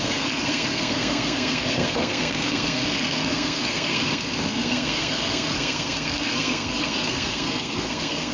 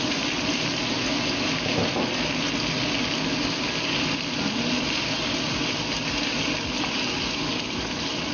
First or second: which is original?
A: second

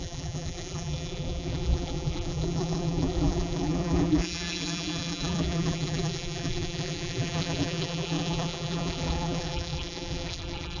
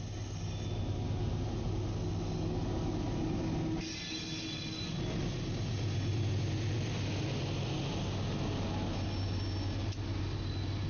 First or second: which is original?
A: second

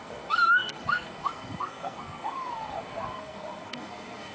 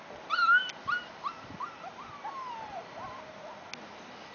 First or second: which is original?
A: second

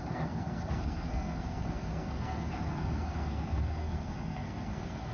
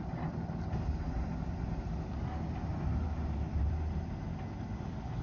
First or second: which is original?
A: second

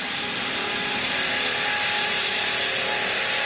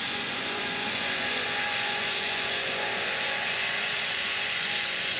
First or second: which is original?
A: first